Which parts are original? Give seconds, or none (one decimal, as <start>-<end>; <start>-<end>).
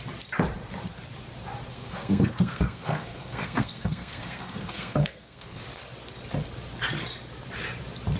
0.0-1.7; 5.6-8.2